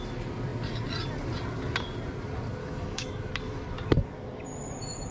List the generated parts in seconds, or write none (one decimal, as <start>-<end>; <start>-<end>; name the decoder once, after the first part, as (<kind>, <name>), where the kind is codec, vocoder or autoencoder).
2.6-3.3 (codec, DAC)